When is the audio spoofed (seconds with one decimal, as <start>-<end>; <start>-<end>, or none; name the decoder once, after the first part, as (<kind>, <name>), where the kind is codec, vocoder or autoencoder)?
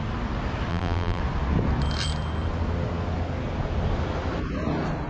0.7-1.2 (vocoder, BigVGAN v2)